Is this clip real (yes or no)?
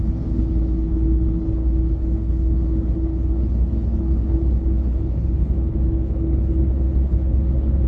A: no